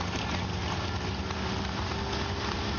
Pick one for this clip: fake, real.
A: real